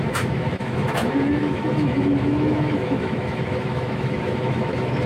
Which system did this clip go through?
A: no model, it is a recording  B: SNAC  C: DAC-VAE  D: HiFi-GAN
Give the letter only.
C